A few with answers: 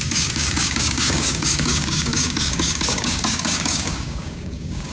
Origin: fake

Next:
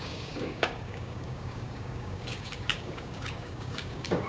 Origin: fake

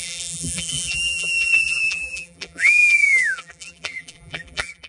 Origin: fake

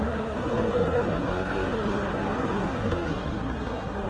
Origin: fake